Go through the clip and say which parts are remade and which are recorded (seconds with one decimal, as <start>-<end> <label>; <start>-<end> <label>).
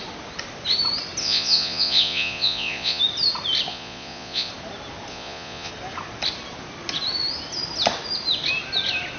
0.0-1.2 recorded; 1.2-3.0 remade; 3.0-3.7 recorded; 3.7-4.5 remade; 4.5-5.1 recorded; 5.1-5.7 remade; 5.7-9.2 recorded